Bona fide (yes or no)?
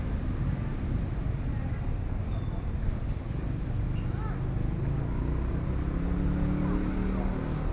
yes